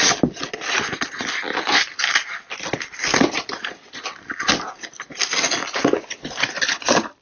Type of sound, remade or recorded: recorded